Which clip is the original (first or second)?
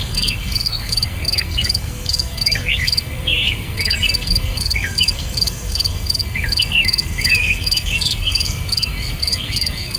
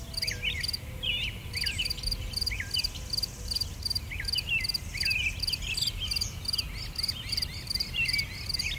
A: second